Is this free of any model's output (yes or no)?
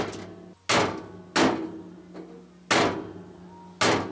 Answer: yes